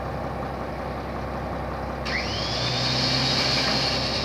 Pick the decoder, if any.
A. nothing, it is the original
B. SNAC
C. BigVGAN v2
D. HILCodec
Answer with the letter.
A